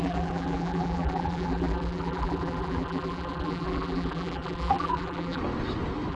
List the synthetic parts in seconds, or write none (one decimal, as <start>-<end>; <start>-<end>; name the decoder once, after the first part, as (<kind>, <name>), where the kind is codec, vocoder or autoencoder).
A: 0.0-5.4 (vocoder, BigVGAN v2)